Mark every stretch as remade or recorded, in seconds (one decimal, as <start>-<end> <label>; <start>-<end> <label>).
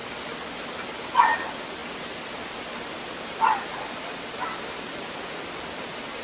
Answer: 0.0-0.5 remade; 0.5-6.2 recorded